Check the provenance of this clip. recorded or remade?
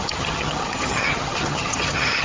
remade